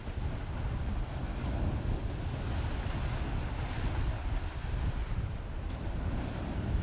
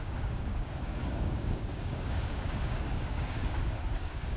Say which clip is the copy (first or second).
second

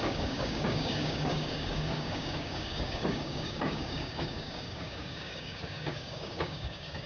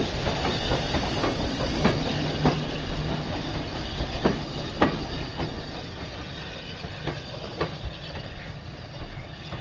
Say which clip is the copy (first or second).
first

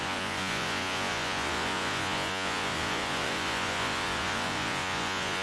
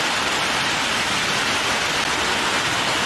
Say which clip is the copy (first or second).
first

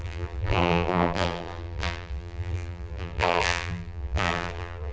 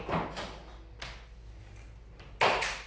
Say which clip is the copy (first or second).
first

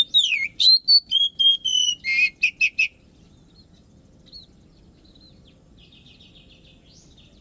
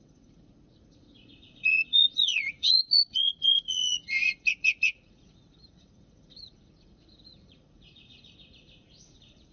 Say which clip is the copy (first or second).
second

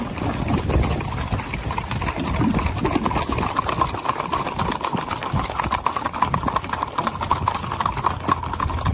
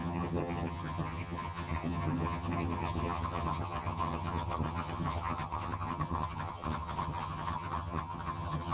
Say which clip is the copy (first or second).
second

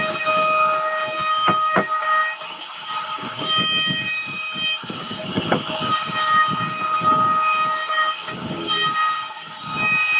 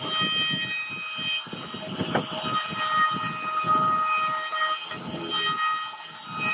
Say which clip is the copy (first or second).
first